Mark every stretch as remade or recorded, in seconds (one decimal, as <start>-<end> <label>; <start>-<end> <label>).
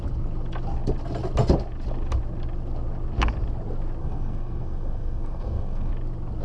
0.0-4.0 recorded; 4.0-5.9 remade; 5.9-6.4 recorded